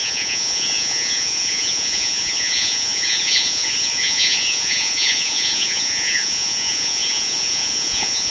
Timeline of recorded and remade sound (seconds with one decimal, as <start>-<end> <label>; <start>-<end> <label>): 0.0-8.3 remade